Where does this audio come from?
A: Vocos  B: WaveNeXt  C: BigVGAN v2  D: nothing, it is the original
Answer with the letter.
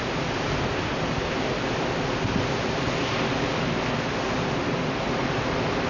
D